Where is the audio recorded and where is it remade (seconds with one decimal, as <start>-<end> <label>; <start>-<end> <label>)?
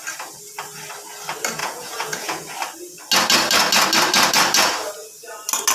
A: 0.0-1.6 recorded; 1.6-2.5 remade; 2.5-5.7 recorded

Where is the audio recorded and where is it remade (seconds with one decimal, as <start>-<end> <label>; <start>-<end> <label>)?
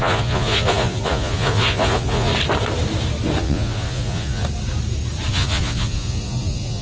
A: 0.0-2.3 remade; 2.3-3.4 recorded; 3.4-4.4 remade; 4.4-5.3 recorded; 5.3-6.8 remade